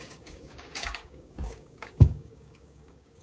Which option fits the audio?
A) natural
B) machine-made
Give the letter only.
B